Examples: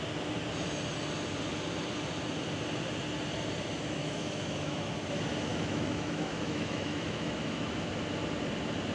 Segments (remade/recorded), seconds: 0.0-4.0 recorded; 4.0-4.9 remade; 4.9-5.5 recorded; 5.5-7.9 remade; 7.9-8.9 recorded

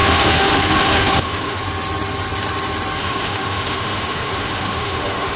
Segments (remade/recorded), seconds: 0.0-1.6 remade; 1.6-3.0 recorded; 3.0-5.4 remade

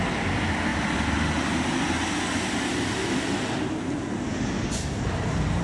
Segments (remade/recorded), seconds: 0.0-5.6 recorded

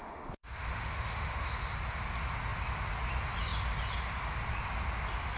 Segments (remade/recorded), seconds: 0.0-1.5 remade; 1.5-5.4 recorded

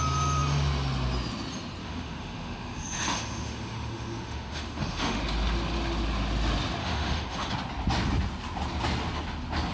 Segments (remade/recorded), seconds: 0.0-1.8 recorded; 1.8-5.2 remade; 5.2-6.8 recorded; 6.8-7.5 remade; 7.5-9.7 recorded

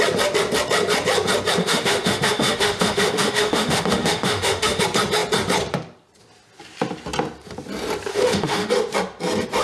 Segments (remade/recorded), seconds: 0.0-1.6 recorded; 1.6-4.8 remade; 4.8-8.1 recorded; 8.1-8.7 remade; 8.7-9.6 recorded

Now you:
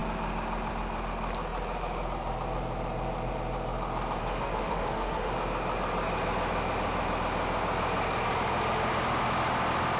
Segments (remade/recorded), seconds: 0.0-4.2 recorded; 4.2-5.3 remade; 5.3-10.0 recorded